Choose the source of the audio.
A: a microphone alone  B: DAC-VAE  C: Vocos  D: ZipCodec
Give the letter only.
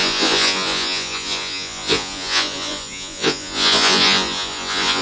C